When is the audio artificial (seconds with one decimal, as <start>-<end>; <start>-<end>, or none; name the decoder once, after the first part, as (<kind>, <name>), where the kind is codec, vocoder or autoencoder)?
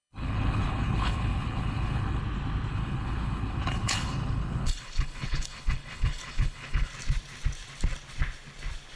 0.0-2.2 (codec, HILCodec); 2.7-6.9